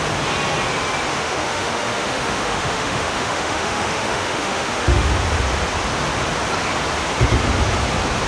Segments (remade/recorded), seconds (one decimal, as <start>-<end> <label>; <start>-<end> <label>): 0.0-1.1 recorded; 1.1-5.1 remade; 5.1-8.3 recorded

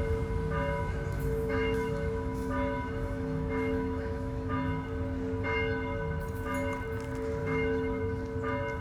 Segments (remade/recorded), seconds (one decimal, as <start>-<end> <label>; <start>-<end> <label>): 0.0-0.8 recorded; 0.8-4.5 remade; 4.5-7.4 recorded; 7.4-8.0 remade; 8.0-8.8 recorded

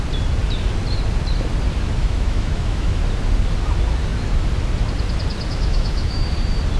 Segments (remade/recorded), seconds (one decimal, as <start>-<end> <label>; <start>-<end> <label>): 0.0-2.0 recorded; 2.0-2.9 remade; 2.9-5.5 recorded; 5.5-6.3 remade; 6.3-6.8 recorded

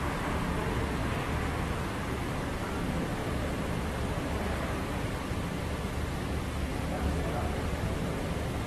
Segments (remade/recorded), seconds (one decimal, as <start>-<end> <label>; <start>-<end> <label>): 0.0-8.7 recorded

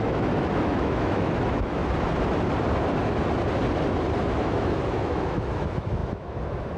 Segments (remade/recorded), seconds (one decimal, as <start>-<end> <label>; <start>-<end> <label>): 0.0-1.8 remade; 1.8-4.4 recorded; 4.4-6.8 remade